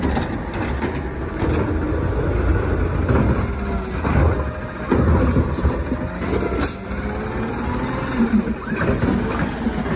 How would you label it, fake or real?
real